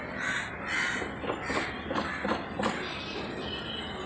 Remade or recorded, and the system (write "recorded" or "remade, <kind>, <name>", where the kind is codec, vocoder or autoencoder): recorded